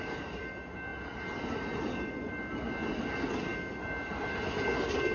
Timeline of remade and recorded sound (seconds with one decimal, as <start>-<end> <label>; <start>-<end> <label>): 0.0-5.1 recorded